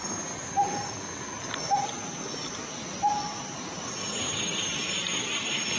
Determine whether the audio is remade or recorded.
recorded